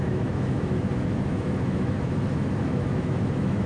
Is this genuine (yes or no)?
no